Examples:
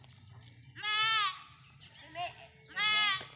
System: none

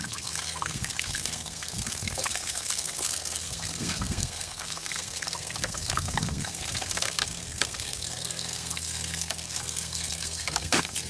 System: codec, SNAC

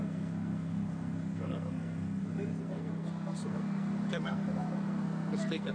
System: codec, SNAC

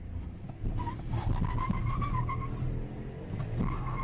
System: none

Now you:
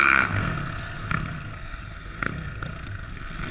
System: codec, SNAC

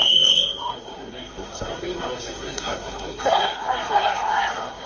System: codec, SNAC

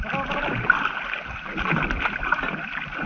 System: none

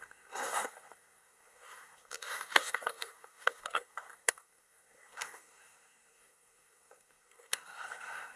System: codec, SNAC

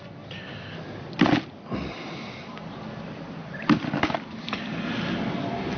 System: none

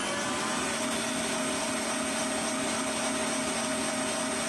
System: none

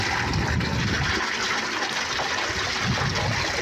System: none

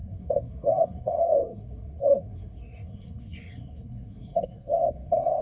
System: codec, SNAC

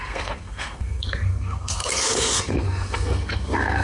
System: codec, SNAC